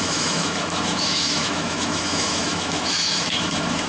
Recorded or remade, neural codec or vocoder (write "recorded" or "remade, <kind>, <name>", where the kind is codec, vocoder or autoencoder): remade, autoencoder, DAC-VAE